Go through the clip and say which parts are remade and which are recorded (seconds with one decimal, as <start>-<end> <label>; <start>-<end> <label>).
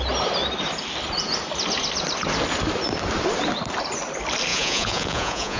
0.0-4.5 recorded; 4.5-5.6 remade